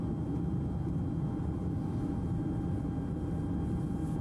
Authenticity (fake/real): real